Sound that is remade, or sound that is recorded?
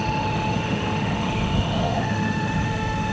remade